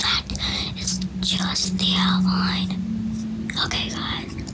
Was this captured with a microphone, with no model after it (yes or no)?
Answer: yes